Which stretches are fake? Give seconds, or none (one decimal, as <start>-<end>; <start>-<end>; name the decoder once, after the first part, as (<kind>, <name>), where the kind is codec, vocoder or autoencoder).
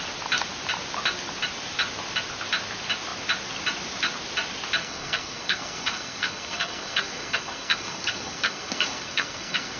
4.8-9.8 (codec, SNAC)